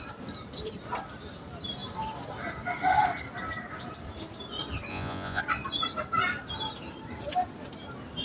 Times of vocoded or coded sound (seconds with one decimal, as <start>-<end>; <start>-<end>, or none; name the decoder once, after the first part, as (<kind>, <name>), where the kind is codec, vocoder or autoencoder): 4.9-5.4 (vocoder, Vocos)